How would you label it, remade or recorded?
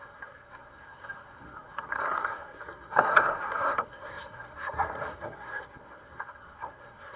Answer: remade